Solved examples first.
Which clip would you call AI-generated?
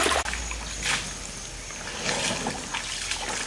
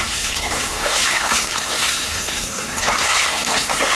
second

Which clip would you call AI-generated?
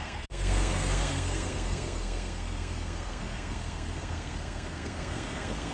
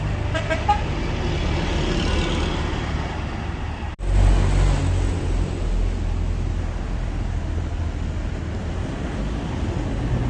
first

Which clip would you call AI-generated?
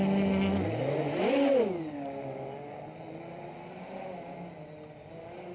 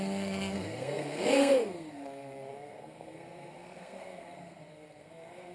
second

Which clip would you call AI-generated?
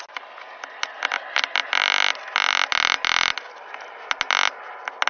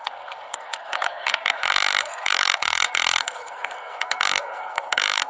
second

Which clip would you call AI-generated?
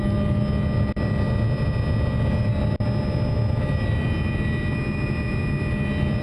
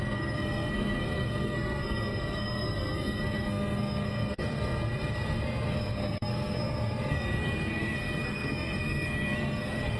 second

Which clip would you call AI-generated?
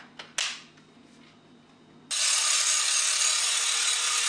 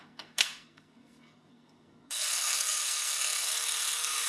second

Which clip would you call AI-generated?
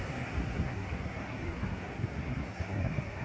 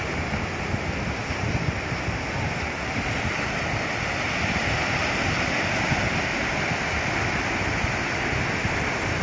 first